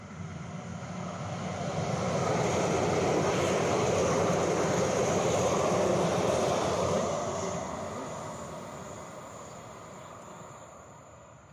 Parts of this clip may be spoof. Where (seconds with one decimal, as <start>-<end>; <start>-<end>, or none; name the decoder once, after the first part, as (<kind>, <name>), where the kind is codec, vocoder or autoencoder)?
none